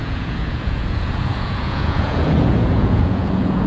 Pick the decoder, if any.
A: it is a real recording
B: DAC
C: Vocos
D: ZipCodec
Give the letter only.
C